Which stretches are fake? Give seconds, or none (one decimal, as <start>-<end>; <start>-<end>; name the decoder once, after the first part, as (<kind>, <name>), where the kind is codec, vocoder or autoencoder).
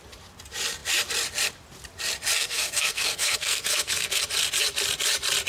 2.4-4.2 (codec, SNAC)